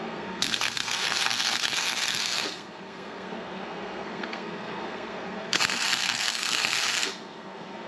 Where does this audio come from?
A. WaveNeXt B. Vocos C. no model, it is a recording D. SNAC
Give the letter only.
D